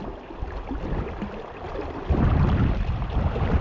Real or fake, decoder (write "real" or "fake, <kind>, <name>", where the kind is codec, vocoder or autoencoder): fake, vocoder, BigVGAN v2